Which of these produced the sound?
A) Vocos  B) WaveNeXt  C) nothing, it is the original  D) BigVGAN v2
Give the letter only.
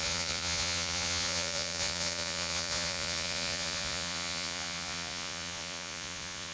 A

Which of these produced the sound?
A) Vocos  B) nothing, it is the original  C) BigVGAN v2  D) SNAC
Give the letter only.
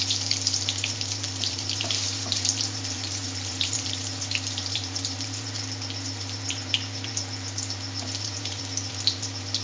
C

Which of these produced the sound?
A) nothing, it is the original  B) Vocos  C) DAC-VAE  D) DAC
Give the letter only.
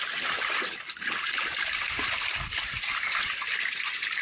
A